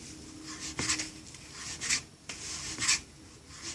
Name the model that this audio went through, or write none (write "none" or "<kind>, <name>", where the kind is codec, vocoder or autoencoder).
none